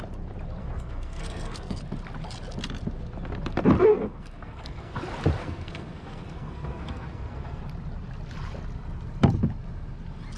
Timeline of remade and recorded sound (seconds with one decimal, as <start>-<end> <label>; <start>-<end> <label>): 0.0-0.6 recorded; 0.6-1.8 remade; 1.8-3.9 recorded; 3.9-5.0 remade; 5.0-5.4 recorded; 5.4-7.6 remade; 7.6-10.4 recorded